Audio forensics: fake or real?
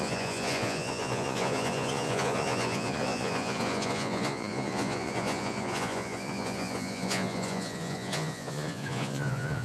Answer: fake